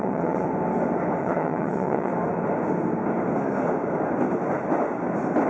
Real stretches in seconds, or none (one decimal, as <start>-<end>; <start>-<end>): 0.5-1.2; 2.1-5.5